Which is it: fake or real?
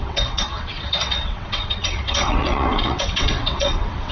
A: fake